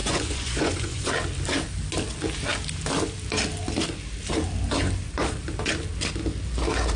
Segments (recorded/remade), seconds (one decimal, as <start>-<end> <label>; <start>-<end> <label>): 0.0-1.1 remade; 1.1-7.0 recorded